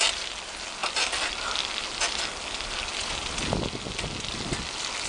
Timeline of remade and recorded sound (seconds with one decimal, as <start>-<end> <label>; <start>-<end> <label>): 0.0-5.1 recorded